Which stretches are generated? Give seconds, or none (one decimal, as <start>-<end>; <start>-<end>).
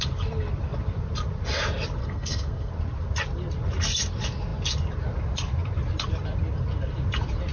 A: 2.0-2.7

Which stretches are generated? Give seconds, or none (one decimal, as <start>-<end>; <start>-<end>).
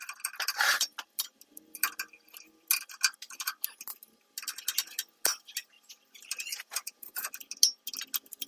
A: 6.5-7.3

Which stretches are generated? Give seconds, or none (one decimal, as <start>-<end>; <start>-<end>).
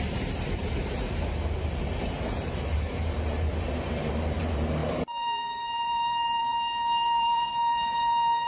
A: 0.0-8.5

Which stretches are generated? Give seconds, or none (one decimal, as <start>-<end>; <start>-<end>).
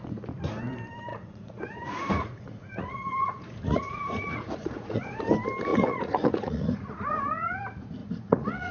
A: 1.1-5.2; 5.7-7.6; 8.0-8.7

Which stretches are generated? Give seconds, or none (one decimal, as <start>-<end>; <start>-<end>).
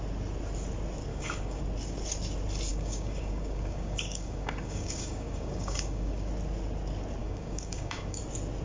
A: 1.1-1.6; 2.7-6.3; 7.2-8.2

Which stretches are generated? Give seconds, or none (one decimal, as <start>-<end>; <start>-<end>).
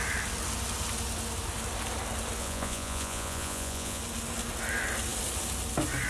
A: 2.4-4.0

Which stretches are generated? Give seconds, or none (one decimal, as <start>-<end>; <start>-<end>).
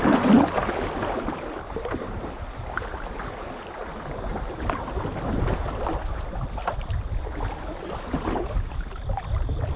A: none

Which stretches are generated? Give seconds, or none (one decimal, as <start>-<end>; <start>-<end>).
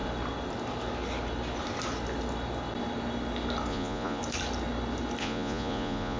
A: 3.7-4.2; 5.2-6.2